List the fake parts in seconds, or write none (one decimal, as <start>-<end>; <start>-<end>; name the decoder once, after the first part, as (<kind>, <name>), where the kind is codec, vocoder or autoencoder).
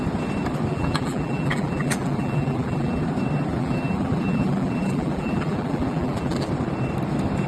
0.7-3.0 (vocoder, BigVGAN v2); 3.5-6.5